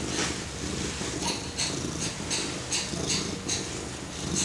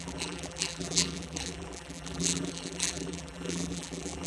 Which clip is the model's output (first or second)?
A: second